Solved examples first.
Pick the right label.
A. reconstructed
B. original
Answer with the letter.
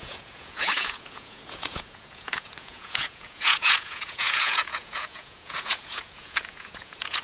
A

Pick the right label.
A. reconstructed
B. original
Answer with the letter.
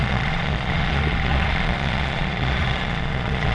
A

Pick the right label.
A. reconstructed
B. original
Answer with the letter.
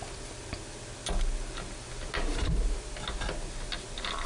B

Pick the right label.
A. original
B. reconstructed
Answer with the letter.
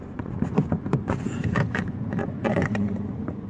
B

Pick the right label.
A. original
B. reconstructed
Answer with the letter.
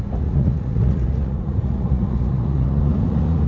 B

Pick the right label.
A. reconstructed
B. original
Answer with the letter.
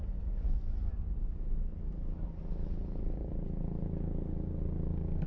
B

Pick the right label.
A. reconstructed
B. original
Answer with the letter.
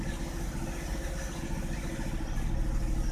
B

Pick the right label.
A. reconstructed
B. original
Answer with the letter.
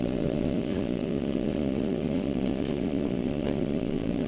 A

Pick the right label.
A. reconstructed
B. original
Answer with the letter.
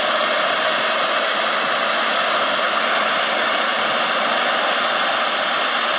B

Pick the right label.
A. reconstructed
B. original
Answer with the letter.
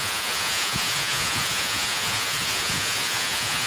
A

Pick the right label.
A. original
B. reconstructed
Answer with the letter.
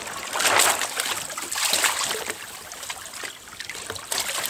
A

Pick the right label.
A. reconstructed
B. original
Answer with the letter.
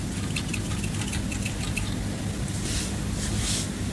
B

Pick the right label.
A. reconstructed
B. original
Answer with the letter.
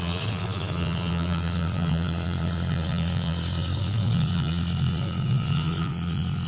A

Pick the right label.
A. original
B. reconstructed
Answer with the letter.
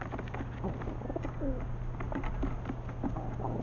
A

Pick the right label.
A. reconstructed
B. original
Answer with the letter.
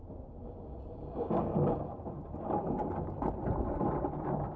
B